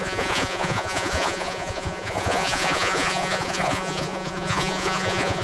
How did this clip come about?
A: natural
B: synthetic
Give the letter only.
B